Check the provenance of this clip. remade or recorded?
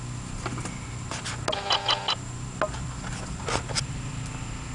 recorded